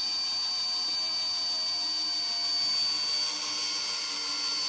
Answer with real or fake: real